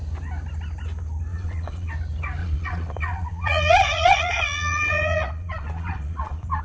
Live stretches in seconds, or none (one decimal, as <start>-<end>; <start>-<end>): 0.0-1.3; 1.9-2.4